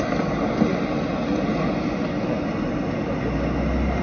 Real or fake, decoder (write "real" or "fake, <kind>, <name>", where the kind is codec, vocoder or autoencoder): real